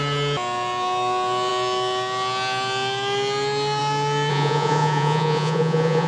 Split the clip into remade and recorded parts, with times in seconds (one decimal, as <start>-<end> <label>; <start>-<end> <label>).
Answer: 0.0-4.3 recorded; 4.3-6.1 remade